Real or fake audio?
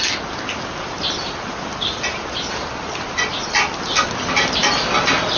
real